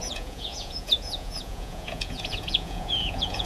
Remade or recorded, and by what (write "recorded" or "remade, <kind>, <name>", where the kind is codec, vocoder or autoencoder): remade, vocoder, Vocos